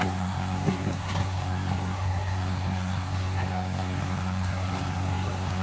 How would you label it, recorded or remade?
remade